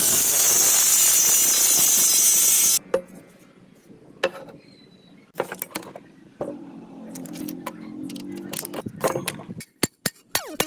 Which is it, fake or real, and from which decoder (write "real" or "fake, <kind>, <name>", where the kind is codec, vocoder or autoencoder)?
real